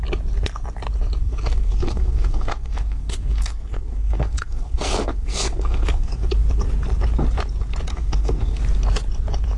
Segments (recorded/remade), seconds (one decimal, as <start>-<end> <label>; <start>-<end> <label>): 0.0-1.2 recorded; 1.2-6.3 remade; 6.3-7.9 recorded; 7.9-8.6 remade; 8.6-9.6 recorded